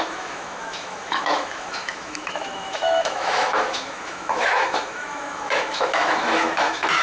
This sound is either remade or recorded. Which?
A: remade